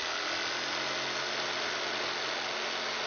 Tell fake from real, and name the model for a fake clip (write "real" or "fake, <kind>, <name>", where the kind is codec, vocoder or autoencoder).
real